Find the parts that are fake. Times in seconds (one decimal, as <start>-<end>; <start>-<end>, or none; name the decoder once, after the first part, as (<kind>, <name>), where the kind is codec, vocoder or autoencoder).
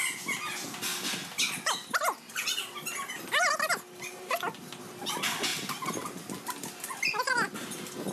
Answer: 5.5-6.2 (vocoder, BigVGAN v2)